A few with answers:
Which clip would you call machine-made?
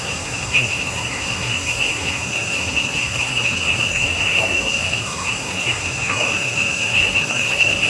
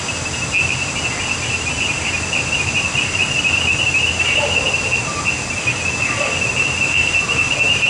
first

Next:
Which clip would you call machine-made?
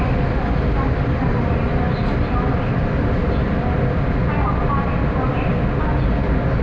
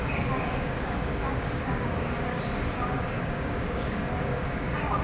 second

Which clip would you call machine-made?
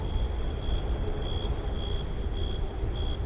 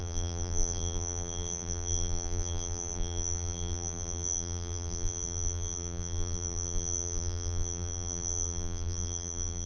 second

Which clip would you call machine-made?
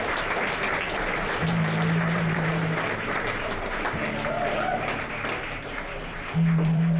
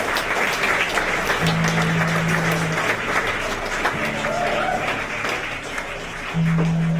first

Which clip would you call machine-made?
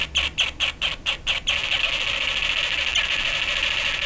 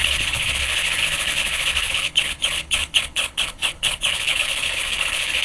second